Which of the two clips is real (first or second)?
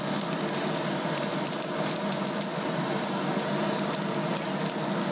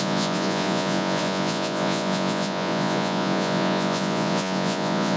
first